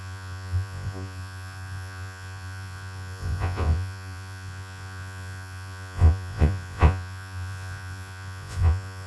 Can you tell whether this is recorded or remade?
remade